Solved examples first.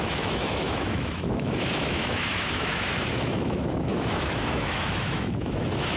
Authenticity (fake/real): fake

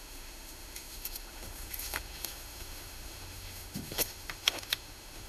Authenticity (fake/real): fake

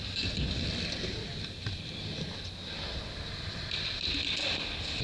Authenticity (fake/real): real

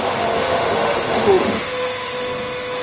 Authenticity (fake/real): fake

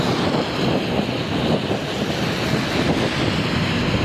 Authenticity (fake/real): real